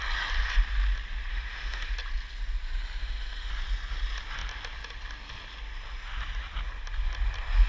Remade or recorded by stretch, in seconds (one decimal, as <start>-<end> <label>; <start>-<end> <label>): 0.0-1.3 recorded; 1.3-1.9 remade; 1.9-3.0 recorded; 3.0-3.5 remade; 3.5-7.7 recorded